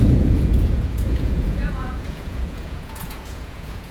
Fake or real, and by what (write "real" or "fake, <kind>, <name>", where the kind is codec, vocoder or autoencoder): fake, vocoder, Vocos